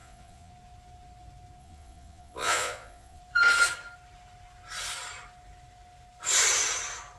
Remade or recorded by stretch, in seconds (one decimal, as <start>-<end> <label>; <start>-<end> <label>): 0.0-0.5 remade; 0.5-1.6 recorded; 1.6-3.2 remade; 3.2-7.2 recorded